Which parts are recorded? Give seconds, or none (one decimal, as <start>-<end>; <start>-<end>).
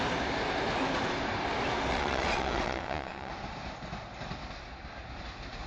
0.0-1.9; 3.3-5.7